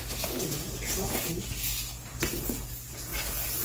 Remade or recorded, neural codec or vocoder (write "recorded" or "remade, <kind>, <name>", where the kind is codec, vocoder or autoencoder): recorded